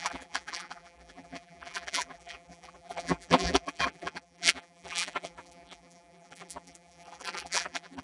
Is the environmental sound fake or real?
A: fake